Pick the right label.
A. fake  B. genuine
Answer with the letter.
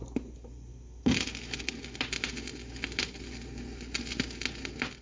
B